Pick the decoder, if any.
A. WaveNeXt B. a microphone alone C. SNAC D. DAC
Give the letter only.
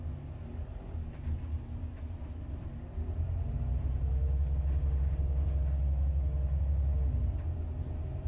B